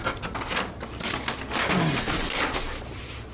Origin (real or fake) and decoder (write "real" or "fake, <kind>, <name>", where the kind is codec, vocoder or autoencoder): real